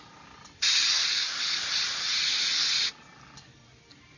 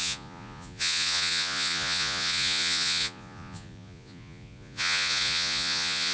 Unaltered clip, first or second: first